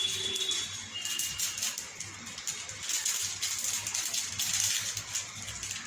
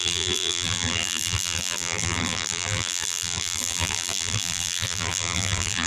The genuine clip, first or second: first